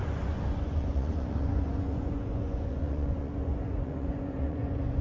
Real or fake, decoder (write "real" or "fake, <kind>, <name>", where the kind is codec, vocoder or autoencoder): fake, vocoder, Vocos